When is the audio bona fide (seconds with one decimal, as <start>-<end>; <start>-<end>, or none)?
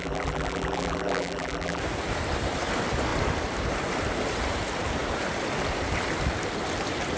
1.8-7.2